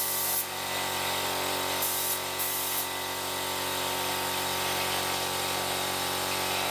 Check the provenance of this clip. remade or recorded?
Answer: recorded